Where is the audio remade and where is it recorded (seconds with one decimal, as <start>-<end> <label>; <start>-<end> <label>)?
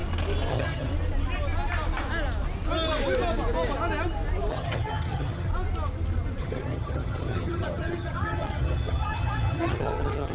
0.0-0.5 recorded; 0.5-0.9 remade; 0.9-4.5 recorded; 4.5-5.5 remade; 5.5-6.4 recorded; 6.4-10.3 remade